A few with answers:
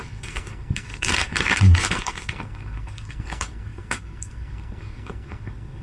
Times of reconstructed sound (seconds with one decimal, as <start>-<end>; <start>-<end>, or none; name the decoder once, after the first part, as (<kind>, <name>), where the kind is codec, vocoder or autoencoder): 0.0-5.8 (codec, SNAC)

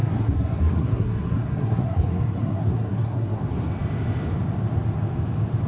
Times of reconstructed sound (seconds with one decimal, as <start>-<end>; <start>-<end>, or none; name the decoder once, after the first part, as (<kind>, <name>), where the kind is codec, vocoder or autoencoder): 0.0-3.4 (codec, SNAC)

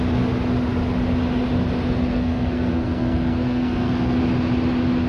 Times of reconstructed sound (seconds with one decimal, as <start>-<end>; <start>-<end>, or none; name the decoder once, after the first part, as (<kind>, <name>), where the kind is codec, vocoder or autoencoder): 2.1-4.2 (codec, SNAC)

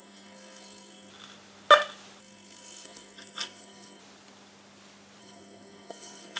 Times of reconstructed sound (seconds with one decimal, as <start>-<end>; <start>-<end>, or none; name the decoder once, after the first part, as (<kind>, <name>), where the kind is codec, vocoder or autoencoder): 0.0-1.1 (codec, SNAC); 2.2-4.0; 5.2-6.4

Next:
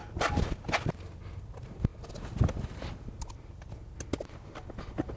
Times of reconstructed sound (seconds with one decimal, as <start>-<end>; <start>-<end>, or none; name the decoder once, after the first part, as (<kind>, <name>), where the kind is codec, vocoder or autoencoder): none

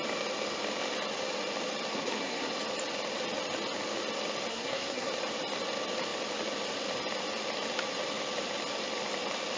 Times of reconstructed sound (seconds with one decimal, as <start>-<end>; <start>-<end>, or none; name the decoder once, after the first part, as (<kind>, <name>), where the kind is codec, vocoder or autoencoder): 1.9-2.5 (codec, SNAC); 4.5-5.1

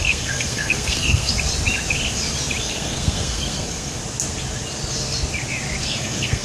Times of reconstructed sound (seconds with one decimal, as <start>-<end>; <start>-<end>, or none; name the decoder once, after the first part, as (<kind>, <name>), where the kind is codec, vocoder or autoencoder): 0.0-1.3 (codec, SNAC); 2.6-4.0; 5.8-6.4

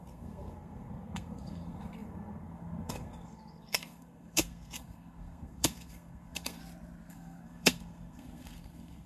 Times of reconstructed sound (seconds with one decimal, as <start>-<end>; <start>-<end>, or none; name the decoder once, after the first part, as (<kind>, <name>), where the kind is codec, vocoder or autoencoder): 0.0-6.6 (codec, SNAC); 7.1-9.1